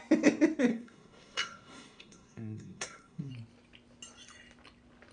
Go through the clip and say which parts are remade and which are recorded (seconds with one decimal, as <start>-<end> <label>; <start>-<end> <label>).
0.0-0.7 recorded; 0.7-3.3 remade; 3.3-5.1 recorded